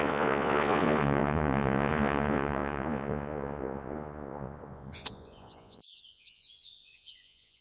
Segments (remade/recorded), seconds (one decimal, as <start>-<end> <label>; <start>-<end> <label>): 0.0-7.6 remade